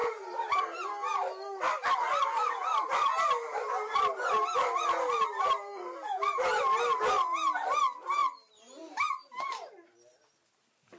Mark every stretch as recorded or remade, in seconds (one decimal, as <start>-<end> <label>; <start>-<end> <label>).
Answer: 0.0-11.0 recorded